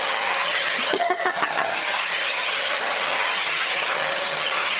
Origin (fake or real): fake